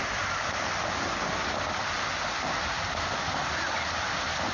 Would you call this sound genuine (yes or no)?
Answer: yes